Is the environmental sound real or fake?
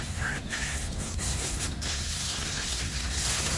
fake